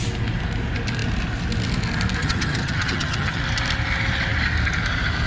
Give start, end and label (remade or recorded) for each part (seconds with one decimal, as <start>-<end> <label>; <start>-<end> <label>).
0.0-2.2 recorded; 2.2-3.4 remade; 3.4-5.3 recorded

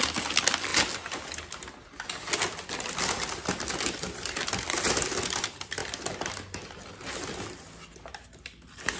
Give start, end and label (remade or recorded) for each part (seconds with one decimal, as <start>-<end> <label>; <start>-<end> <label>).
0.0-9.0 recorded

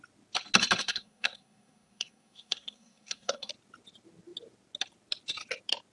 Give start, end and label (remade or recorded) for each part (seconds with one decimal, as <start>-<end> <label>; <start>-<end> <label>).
0.0-0.8 recorded; 0.8-3.5 remade; 3.5-5.9 recorded

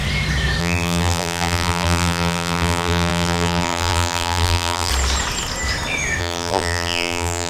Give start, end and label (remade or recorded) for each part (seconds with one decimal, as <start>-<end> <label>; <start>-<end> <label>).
0.0-0.6 recorded; 0.6-4.9 remade; 4.9-6.2 recorded; 6.2-7.5 remade

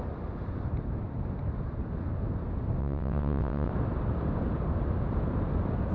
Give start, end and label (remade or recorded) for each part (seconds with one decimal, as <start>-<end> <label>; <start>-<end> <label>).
0.0-2.8 recorded; 2.8-3.7 remade; 3.7-5.9 recorded